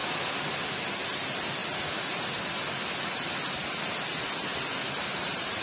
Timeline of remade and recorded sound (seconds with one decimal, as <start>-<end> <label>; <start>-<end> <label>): 0.0-5.6 recorded